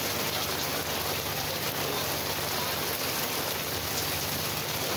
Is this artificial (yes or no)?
no